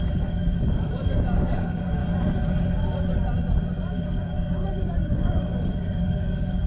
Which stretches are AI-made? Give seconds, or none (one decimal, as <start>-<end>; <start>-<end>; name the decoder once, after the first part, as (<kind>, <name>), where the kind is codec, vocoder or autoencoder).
0.0-2.0 (codec, DAC); 3.6-6.7